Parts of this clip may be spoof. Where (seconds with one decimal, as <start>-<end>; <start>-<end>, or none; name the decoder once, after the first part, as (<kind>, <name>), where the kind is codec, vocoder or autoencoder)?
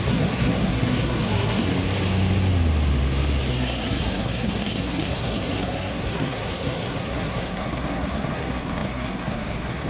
0.0-1.7 (codec, SNAC); 3.5-9.9